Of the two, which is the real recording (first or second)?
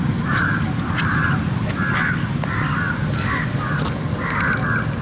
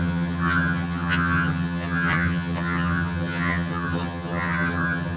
first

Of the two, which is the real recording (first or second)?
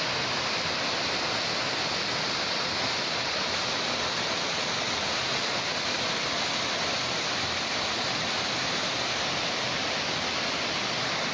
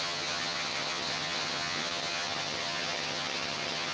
first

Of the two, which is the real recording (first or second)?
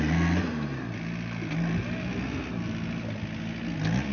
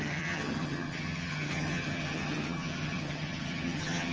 first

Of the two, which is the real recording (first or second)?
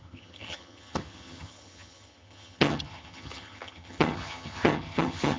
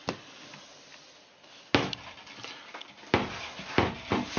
second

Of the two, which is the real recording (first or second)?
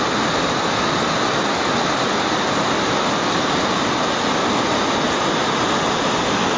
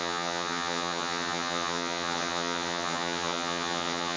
first